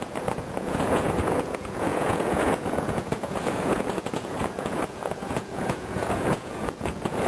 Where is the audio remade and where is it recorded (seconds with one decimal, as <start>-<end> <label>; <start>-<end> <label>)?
0.0-7.3 remade